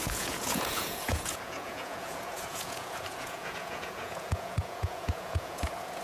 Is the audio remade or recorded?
remade